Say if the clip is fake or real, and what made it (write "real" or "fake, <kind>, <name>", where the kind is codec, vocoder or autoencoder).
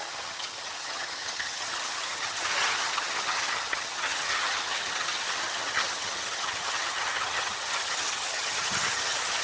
fake, vocoder, HiFi-GAN